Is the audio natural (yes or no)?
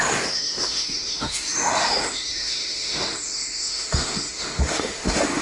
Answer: no